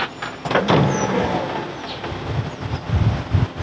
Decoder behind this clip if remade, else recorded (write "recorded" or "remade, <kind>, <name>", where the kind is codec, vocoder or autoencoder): recorded